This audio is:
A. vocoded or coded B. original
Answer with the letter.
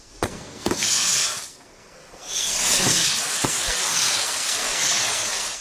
A